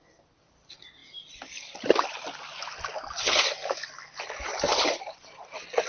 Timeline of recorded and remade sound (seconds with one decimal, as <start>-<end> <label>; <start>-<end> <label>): 0.0-5.9 recorded